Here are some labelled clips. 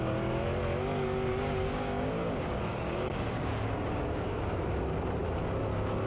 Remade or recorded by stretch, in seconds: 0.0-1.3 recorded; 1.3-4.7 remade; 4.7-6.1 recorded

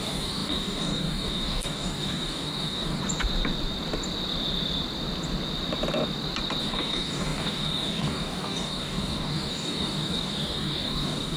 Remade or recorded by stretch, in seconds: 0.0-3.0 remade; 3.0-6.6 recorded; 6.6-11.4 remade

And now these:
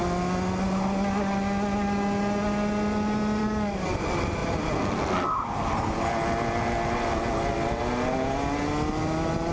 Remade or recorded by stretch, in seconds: 0.0-3.4 recorded; 3.4-4.0 remade; 4.0-9.5 recorded

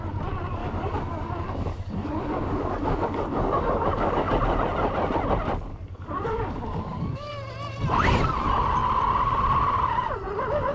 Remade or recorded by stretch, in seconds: 0.0-0.6 recorded; 0.6-4.3 remade; 4.3-5.7 recorded; 5.7-7.3 remade; 7.3-10.7 recorded

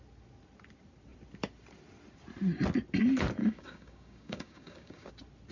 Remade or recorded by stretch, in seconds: 0.0-3.4 recorded; 3.4-5.1 remade; 5.1-5.5 recorded

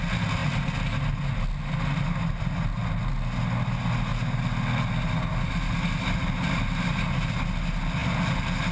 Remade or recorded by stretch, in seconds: 0.0-8.7 recorded